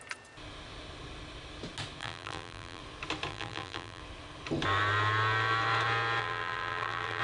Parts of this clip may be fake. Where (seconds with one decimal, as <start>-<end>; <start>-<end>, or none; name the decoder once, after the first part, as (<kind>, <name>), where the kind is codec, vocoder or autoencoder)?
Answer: 2.0-2.8 (vocoder, BigVGAN v2); 3.3-4.0; 6.2-7.2